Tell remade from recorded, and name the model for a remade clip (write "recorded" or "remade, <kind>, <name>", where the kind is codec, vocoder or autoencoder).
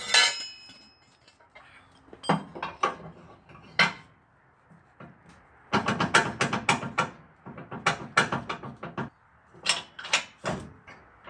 recorded